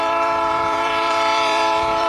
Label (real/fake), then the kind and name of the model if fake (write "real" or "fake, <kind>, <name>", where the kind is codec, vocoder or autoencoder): fake, vocoder, BigVGAN v2